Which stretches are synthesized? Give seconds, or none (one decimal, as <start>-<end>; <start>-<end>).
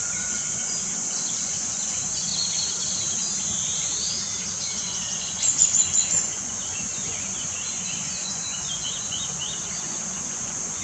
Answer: 0.0-2.3; 3.5-3.9; 4.6-10.8